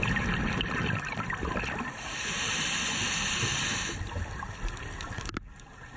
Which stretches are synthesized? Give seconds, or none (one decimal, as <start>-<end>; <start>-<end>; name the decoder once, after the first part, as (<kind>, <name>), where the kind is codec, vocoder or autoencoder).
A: 0.0-3.6 (vocoder, BigVGAN v2)